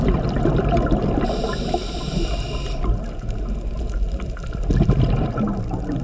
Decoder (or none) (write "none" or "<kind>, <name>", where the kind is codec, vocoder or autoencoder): none